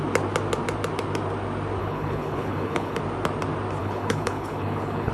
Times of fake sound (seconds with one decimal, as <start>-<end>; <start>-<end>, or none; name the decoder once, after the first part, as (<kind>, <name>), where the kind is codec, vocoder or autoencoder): 1.8-3.0 (codec, HILCodec); 3.8-5.1